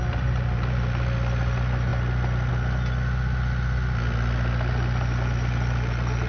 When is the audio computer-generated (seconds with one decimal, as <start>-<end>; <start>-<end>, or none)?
none

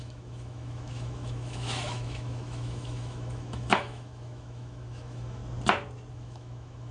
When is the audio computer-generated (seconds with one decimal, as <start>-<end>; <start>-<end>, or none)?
0.0-5.4; 6.1-6.9

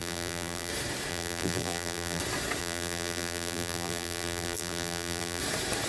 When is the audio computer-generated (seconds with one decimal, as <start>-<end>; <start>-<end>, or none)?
0.0-0.7; 1.1-2.2; 2.6-5.4

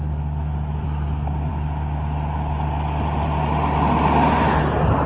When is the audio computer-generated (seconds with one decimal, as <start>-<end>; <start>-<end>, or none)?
none